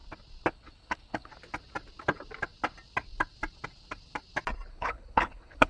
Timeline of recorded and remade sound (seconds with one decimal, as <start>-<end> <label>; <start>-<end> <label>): 0.0-0.5 recorded; 0.5-1.3 remade; 1.3-4.7 recorded; 4.7-5.7 remade